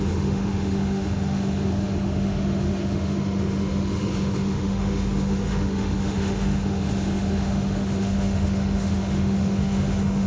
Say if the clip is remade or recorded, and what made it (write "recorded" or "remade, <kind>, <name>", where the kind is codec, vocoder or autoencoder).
remade, autoencoder, DAC-VAE